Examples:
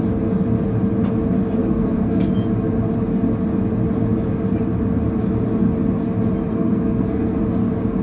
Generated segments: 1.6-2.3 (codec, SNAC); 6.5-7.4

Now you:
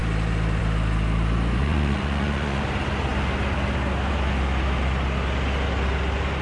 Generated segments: 1.6-2.6 (vocoder, Vocos)

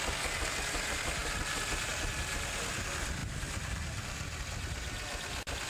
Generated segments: 3.2-4.4 (vocoder, BigVGAN v2)

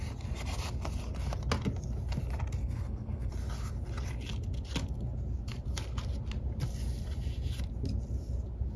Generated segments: 2.6-3.3 (codec, SNAC)

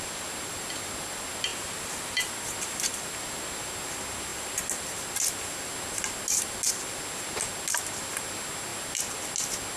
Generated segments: 1.5-2.3 (vocoder, BigVGAN v2)

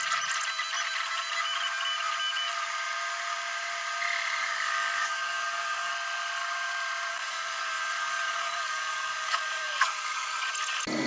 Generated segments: 4.4-5.9 (codec, DAC); 7.1-10.4